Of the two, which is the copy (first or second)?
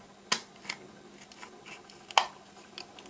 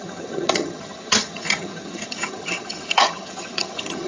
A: second